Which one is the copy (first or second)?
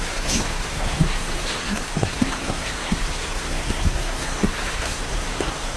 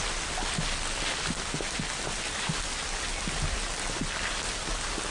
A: first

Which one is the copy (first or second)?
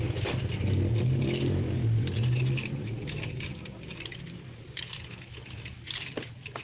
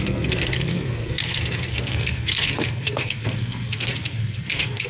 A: second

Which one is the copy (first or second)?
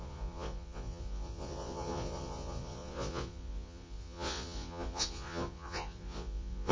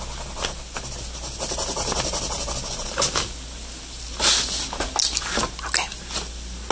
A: first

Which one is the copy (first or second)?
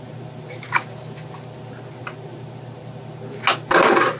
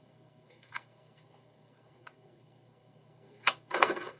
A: second